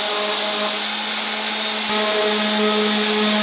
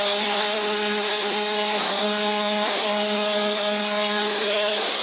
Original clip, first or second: first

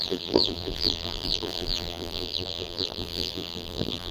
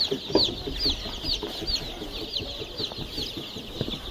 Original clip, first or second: second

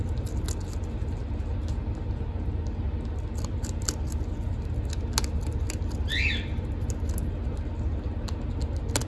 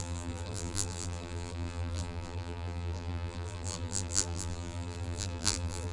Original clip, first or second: first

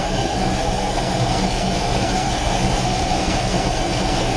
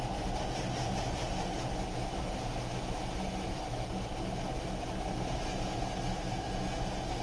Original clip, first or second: second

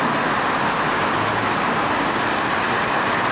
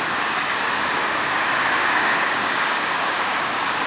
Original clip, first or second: first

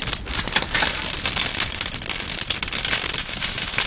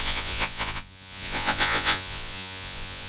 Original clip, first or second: first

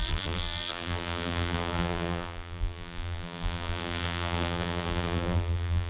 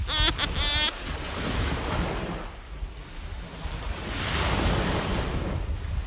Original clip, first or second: second